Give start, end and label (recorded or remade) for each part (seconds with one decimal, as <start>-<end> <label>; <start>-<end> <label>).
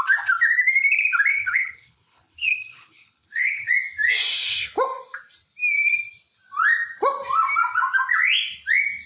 0.0-1.3 recorded; 1.3-3.7 remade; 3.7-9.1 recorded